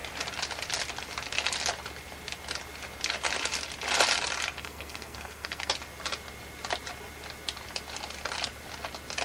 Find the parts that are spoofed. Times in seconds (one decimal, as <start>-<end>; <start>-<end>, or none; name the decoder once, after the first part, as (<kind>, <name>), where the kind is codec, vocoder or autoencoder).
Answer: 4.6-5.7 (codec, SNAC)